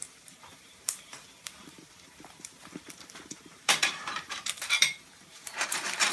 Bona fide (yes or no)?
no